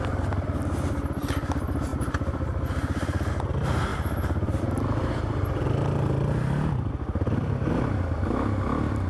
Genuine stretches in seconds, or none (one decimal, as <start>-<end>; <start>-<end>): 0.0-1.9; 3.3-3.9; 4.6-9.1